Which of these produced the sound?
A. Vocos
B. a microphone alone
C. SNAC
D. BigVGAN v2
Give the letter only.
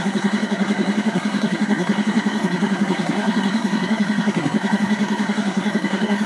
C